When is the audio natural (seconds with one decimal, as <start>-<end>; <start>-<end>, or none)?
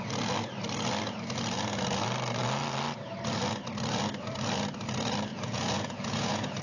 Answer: 0.0-5.3